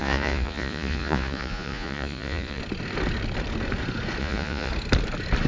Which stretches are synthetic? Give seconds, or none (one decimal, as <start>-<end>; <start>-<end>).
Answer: 0.0-2.6; 4.2-4.7